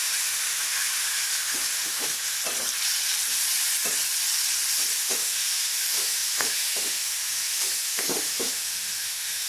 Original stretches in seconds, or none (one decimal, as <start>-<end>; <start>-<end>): 2.4-5.0